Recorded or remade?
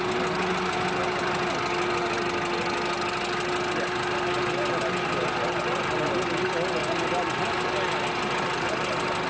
recorded